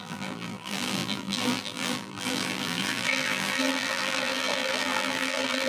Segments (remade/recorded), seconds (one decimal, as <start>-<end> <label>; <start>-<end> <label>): 0.0-5.7 remade